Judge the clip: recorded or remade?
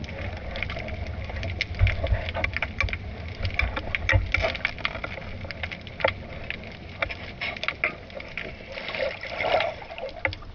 recorded